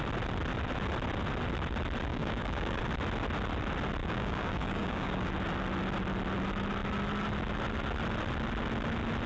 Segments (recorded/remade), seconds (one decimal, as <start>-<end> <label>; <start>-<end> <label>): 0.0-2.1 recorded; 2.1-2.8 remade; 2.8-4.0 recorded; 4.0-5.3 remade; 5.3-9.3 recorded